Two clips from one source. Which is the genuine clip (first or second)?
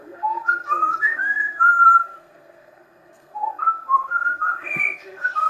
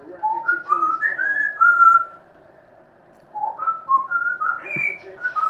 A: second